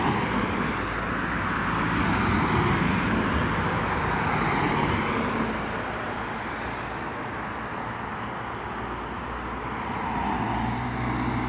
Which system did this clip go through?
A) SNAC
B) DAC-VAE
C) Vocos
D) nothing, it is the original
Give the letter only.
D